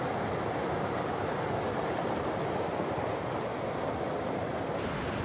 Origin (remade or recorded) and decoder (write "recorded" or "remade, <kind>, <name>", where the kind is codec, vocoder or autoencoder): recorded